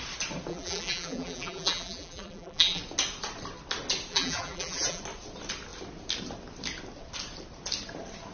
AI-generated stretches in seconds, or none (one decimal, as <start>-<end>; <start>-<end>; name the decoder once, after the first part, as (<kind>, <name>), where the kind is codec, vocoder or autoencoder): 0.5-2.8 (vocoder, BigVGAN v2); 4.1-5.0